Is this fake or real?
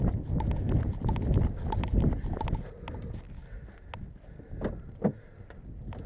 real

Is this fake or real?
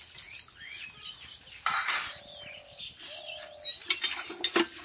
real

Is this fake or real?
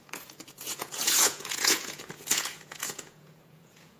fake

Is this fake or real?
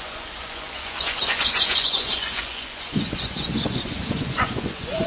fake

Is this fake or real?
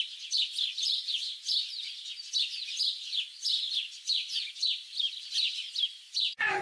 fake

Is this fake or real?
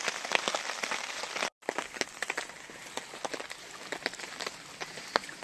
real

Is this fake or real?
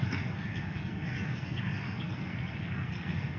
fake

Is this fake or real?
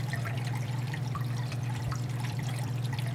fake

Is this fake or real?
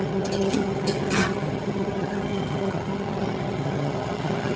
fake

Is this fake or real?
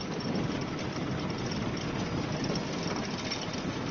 real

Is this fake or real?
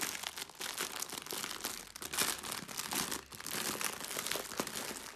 real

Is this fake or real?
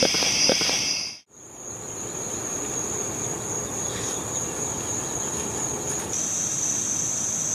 real